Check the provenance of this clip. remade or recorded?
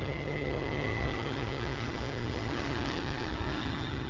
remade